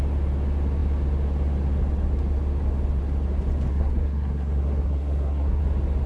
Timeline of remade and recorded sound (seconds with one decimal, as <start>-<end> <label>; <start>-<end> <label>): 0.0-3.7 recorded; 3.7-5.6 remade; 5.6-6.1 recorded